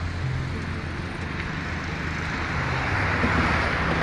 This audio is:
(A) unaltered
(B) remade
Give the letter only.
A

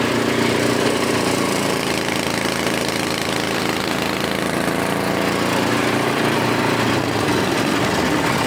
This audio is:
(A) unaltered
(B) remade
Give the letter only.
A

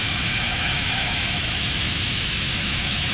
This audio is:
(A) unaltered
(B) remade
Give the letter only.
B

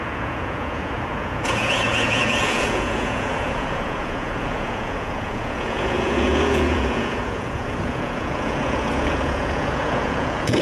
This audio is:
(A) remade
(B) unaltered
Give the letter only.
A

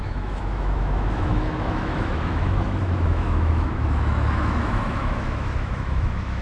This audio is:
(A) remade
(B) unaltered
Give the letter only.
A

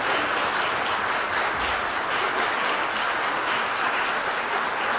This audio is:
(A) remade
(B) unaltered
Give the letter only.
B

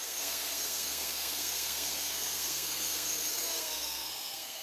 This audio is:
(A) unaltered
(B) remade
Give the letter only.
B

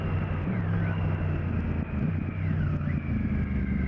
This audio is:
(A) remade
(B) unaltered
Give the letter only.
B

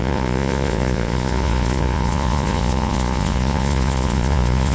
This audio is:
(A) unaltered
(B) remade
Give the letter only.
B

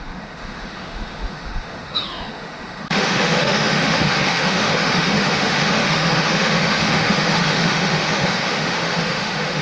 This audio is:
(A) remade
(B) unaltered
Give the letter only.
A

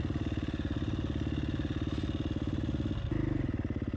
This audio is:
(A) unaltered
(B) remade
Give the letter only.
A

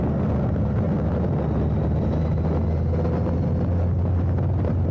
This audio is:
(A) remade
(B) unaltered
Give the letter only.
B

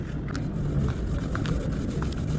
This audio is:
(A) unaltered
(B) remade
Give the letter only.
A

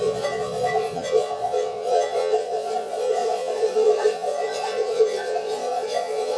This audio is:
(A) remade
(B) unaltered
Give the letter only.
A